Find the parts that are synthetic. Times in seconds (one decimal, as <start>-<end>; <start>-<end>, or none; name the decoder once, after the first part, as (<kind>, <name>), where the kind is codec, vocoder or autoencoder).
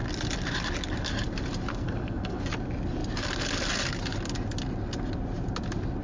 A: 1.7-2.4 (codec, SNAC)